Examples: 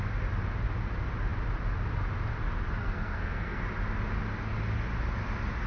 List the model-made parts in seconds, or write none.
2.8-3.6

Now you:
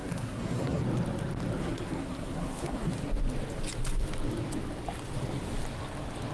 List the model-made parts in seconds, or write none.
0.0-0.8; 1.6-2.9